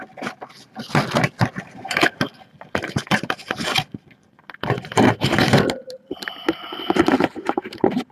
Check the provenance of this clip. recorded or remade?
recorded